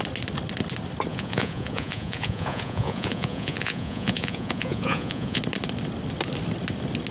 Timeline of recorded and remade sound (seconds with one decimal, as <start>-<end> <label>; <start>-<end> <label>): 0.0-1.1 recorded; 1.1-5.4 remade; 5.4-7.1 recorded

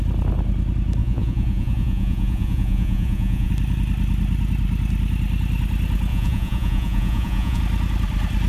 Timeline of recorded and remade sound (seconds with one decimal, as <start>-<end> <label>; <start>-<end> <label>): 0.0-1.0 recorded; 1.0-3.5 remade; 3.5-6.1 recorded; 6.1-7.6 remade; 7.6-8.5 recorded

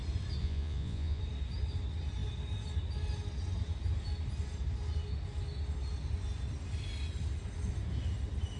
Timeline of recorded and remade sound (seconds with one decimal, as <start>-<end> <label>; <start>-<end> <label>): 0.0-0.4 recorded; 0.4-1.2 remade; 1.2-8.6 recorded

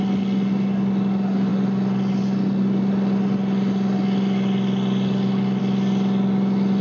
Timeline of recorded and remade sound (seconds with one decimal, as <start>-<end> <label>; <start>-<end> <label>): 0.0-6.8 recorded